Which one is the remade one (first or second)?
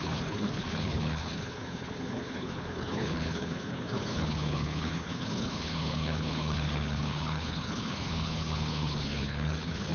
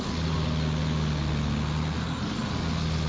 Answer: first